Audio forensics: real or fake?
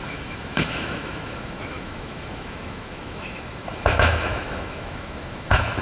fake